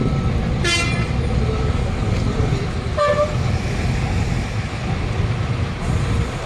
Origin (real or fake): real